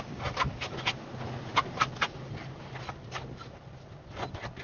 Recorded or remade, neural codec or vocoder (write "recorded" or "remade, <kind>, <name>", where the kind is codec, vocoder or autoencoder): recorded